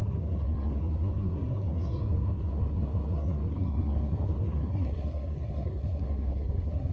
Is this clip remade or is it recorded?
remade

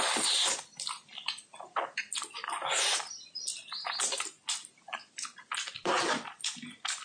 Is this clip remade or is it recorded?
recorded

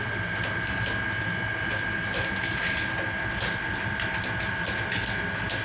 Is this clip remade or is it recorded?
recorded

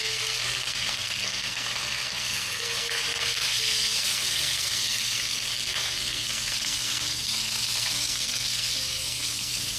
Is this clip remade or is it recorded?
remade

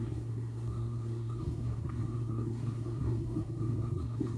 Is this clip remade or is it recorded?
remade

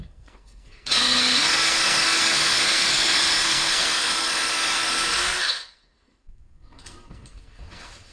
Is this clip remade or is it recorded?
remade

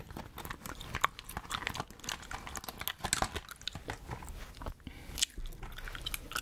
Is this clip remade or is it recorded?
recorded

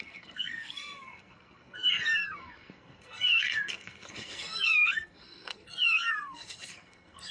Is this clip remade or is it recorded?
remade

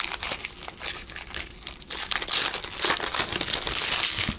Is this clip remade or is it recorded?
recorded